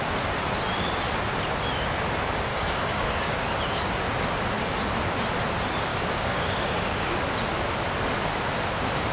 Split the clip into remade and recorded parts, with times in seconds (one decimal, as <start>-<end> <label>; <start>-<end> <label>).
0.0-2.5 recorded; 2.5-3.5 remade; 3.5-5.9 recorded; 5.9-7.1 remade; 7.1-9.1 recorded